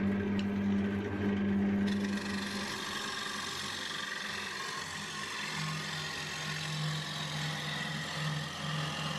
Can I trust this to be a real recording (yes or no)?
yes